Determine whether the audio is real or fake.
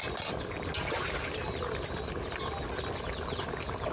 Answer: real